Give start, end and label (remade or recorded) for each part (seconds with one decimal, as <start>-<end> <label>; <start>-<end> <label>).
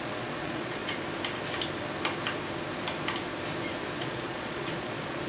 0.0-0.8 remade; 0.8-4.0 recorded; 4.0-5.3 remade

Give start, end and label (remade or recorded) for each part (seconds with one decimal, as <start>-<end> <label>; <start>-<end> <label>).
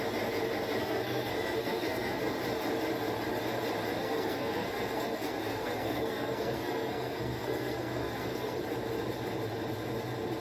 0.0-0.8 recorded; 0.8-2.3 remade; 2.3-4.0 recorded; 4.0-8.6 remade; 8.6-10.4 recorded